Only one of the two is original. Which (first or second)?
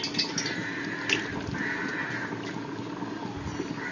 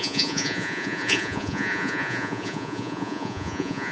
first